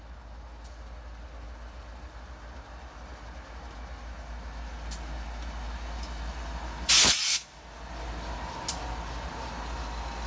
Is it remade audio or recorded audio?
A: recorded